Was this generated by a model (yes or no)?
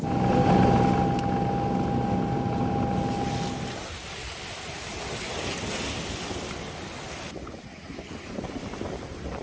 no